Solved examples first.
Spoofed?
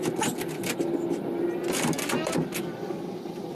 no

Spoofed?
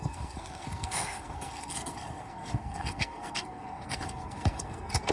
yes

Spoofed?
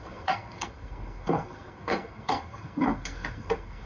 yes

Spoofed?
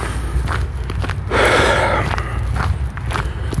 no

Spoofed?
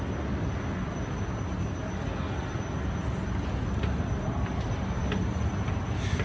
no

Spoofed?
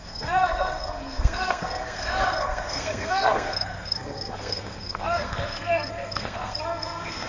yes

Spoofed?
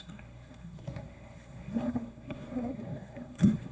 yes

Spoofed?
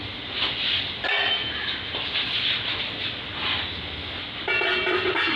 no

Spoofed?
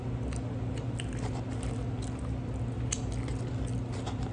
no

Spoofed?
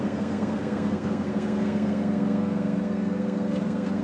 yes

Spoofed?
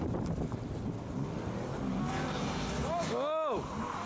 no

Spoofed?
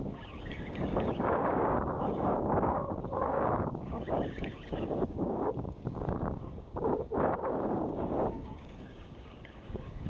yes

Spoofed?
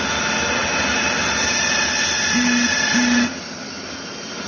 no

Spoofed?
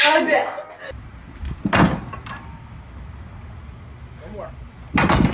no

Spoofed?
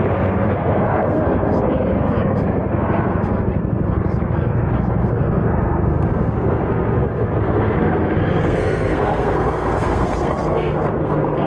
yes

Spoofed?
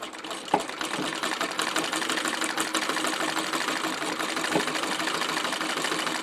no